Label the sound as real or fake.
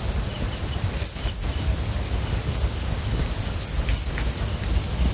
real